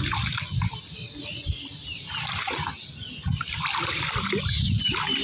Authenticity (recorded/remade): recorded